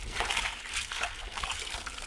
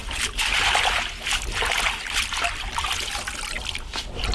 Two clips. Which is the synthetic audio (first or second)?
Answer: first